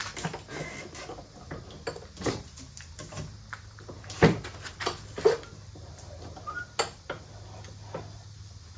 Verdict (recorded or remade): recorded